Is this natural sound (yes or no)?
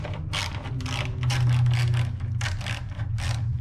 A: yes